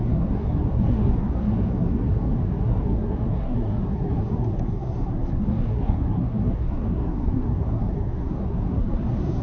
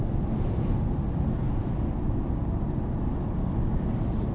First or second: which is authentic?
second